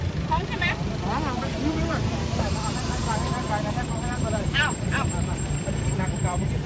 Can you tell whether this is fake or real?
fake